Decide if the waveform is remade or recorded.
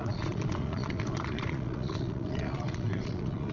remade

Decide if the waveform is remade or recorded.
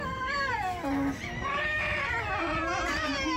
recorded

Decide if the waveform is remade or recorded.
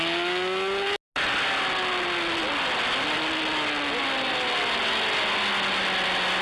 recorded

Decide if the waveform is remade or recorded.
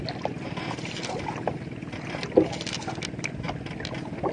recorded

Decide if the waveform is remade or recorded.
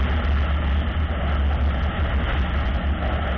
recorded